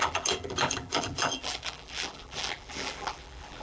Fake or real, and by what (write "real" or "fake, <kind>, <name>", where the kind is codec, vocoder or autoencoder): fake, vocoder, BigVGAN v2